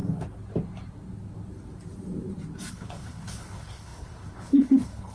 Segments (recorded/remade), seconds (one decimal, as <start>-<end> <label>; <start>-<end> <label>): 0.0-2.7 recorded; 2.7-5.1 remade